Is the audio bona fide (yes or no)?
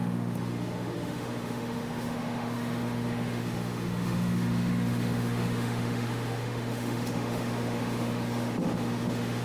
no